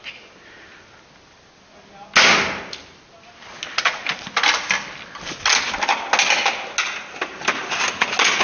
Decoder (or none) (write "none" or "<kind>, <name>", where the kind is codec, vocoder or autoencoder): none